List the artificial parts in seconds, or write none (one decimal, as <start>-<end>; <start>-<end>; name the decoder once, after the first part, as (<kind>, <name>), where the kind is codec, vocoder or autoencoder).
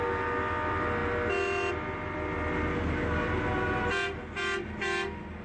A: none